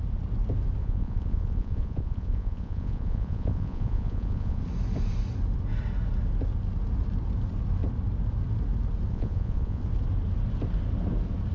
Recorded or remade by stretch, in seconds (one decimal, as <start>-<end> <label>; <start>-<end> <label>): 0.0-0.8 recorded; 0.8-4.6 remade; 4.6-9.1 recorded; 9.1-9.8 remade; 9.8-11.5 recorded